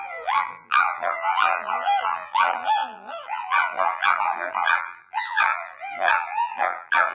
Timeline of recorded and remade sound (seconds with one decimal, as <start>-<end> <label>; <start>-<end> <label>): 0.0-7.1 remade